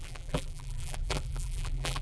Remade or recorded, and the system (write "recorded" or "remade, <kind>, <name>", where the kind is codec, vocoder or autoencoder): remade, vocoder, BigVGAN v2